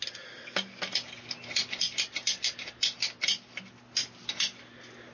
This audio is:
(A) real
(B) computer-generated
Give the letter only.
A